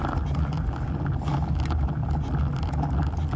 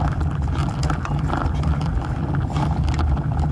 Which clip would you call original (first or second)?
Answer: first